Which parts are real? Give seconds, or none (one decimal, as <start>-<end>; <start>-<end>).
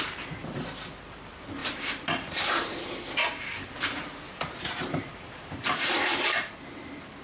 0.0-1.6; 2.8-3.2; 6.5-7.2